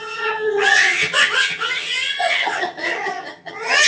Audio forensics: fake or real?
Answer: fake